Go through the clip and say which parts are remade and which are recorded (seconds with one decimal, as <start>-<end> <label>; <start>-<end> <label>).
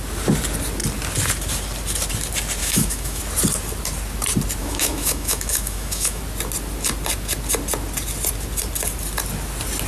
0.0-2.6 recorded; 2.6-3.2 remade; 3.2-4.6 recorded; 4.6-6.2 remade; 6.2-9.9 recorded